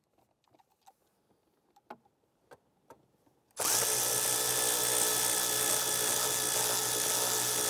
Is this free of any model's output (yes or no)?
yes